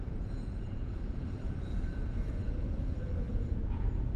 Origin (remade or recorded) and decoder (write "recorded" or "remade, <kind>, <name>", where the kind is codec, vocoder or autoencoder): remade, vocoder, Vocos